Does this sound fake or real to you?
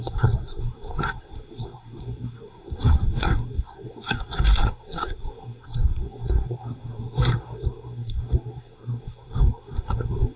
fake